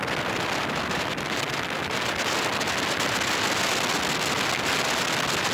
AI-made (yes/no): no